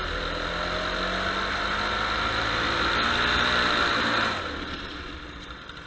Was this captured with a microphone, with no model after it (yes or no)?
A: yes